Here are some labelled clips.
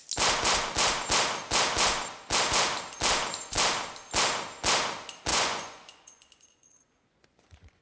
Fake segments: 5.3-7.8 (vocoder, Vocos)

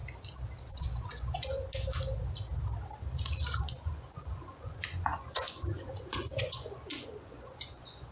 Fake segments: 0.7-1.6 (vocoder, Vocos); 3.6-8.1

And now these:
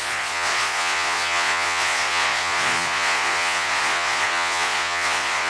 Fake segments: 0.0-5.5 (vocoder, Vocos)

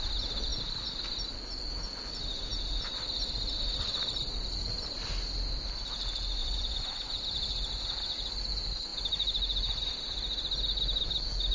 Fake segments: 6.4-6.9 (vocoder, Vocos)

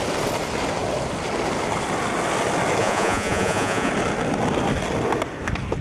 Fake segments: 2.8-3.9 (vocoder, Vocos)